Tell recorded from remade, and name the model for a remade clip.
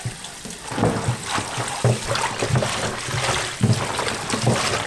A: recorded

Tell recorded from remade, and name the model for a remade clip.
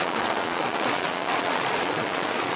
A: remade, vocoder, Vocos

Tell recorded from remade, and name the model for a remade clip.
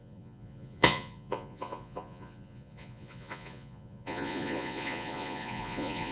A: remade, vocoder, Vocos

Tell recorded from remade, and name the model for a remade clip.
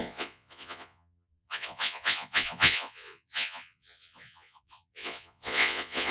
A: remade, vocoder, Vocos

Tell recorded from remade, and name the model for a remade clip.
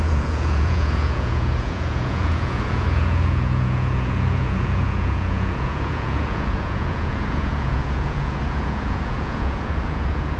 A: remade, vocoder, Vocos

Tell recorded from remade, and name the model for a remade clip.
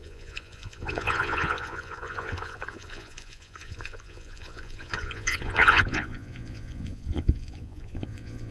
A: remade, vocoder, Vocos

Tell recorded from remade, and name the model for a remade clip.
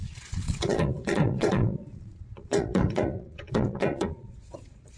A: remade, vocoder, Vocos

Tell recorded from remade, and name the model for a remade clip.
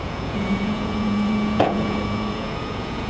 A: remade, vocoder, Vocos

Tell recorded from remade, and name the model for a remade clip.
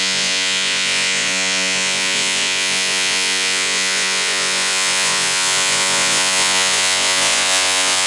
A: remade, vocoder, Vocos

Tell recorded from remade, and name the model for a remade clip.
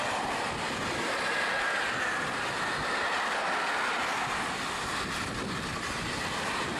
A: recorded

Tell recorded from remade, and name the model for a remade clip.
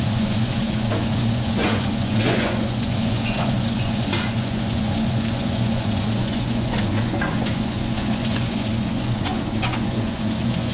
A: remade, vocoder, Vocos